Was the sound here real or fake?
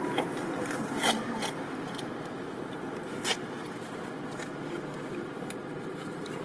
real